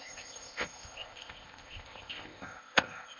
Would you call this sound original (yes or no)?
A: no